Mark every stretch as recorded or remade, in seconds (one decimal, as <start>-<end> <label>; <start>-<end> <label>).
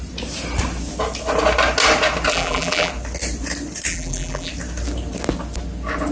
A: 0.0-2.3 recorded; 2.3-2.9 remade; 2.9-3.9 recorded; 3.9-4.5 remade; 4.5-6.1 recorded